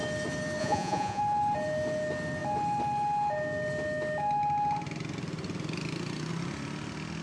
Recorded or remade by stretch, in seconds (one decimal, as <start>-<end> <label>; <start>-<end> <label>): 0.0-0.6 recorded; 0.6-1.2 remade; 1.2-7.2 recorded